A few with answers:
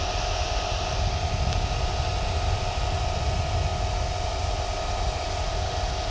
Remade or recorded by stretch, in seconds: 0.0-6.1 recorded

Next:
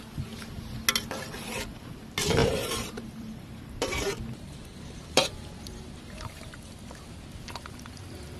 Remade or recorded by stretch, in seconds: 0.0-2.4 recorded; 2.4-6.8 remade; 6.8-8.4 recorded

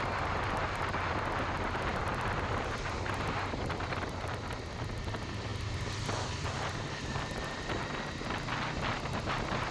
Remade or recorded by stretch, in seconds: 0.0-1.9 recorded; 1.9-3.1 remade; 3.1-5.5 recorded; 5.5-8.0 remade; 8.0-9.7 recorded

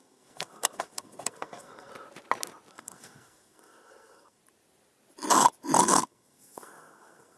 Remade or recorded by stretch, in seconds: 0.0-1.9 remade; 1.9-2.7 recorded; 2.7-4.4 remade; 4.4-5.8 recorded; 5.8-7.4 remade

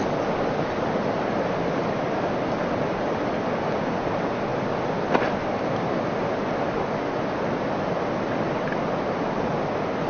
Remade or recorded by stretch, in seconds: 0.0-10.1 recorded

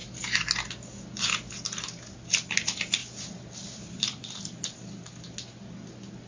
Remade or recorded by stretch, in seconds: 0.0-3.0 recorded; 3.0-4.6 remade; 4.6-6.3 recorded

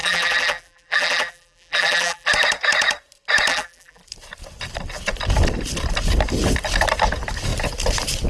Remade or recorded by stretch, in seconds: 0.0-2.3 remade; 2.3-3.5 recorded; 3.5-4.0 remade; 4.0-8.3 recorded